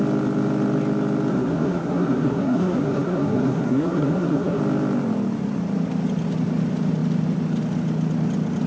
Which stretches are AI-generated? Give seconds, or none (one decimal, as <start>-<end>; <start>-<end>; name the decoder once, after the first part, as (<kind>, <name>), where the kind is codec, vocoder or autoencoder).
1.3-4.6 (codec, SNAC)